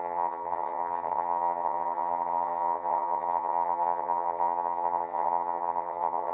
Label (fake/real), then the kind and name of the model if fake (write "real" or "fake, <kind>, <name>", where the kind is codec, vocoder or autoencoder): fake, vocoder, HiFi-GAN